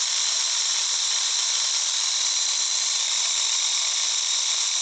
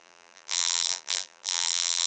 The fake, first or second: second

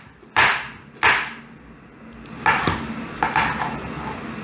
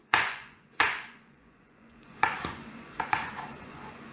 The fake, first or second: second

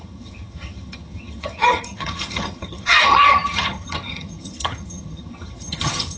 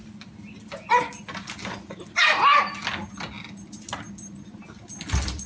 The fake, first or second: first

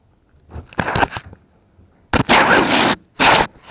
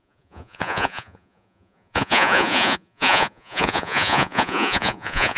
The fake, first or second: second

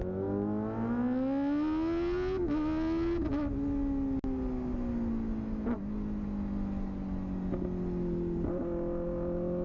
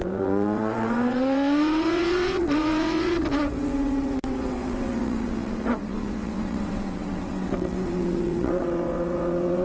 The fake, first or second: second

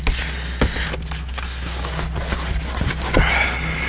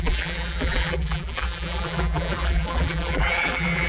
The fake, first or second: second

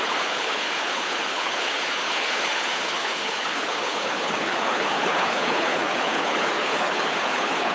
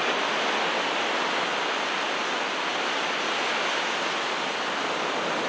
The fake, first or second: first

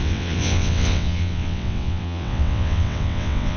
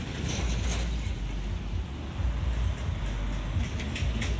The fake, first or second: first